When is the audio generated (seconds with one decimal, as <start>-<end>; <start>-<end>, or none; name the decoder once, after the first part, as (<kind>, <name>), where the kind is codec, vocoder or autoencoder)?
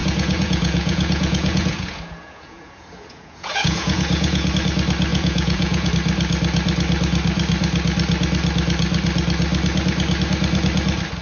0.0-4.5 (vocoder, Vocos); 5.1-5.9